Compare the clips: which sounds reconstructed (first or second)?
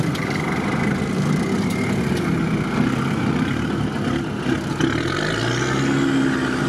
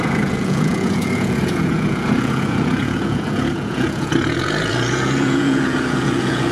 second